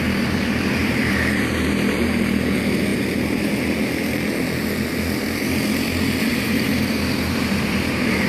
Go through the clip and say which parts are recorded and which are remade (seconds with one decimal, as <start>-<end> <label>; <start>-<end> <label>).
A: 0.0-0.8 recorded; 0.8-2.2 remade; 2.2-6.3 recorded; 6.3-8.3 remade